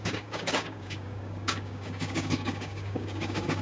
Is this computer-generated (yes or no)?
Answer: yes